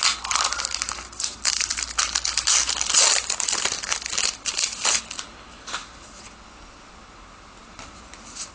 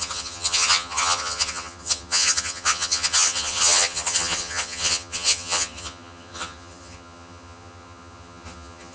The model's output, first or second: second